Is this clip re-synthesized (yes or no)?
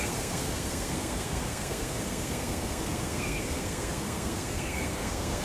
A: yes